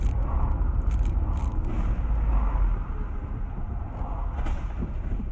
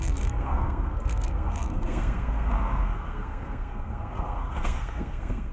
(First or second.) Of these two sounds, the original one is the first